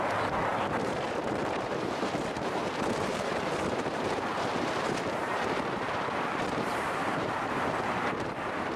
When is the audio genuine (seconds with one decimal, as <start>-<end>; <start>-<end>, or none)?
none